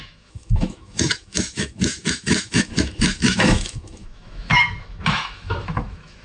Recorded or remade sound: remade